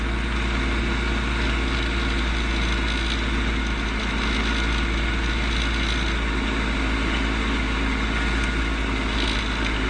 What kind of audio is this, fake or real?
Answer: real